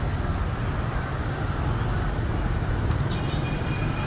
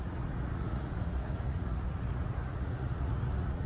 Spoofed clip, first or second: second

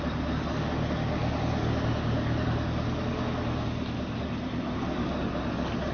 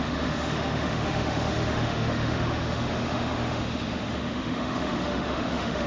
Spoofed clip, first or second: second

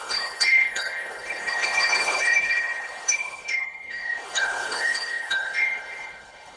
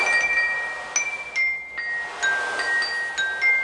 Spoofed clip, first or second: first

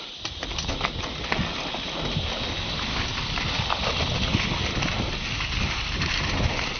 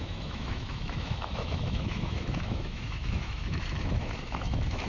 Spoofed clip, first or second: second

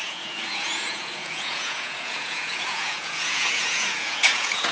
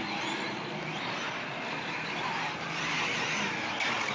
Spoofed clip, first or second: first